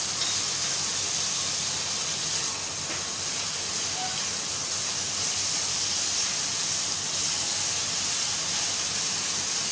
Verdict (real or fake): real